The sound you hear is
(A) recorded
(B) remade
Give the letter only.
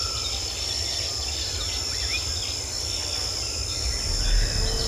A